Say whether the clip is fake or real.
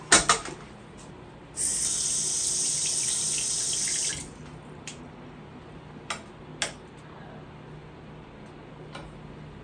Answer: real